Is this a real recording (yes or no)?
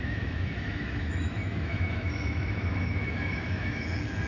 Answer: no